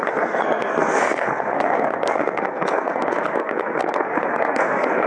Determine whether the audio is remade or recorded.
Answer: remade